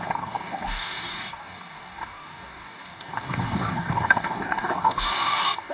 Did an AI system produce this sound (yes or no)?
yes